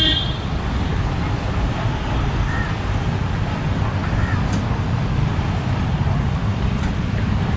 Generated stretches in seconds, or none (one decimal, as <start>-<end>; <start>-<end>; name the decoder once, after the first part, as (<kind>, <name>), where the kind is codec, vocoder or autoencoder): 0.0-4.0 (vocoder, BigVGAN v2); 5.3-7.6